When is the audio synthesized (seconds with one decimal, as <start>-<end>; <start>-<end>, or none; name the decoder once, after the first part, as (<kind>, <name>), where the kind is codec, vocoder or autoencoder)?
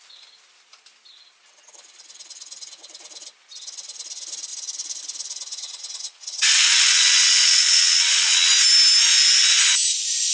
5.5-8.5 (vocoder, WaveNeXt)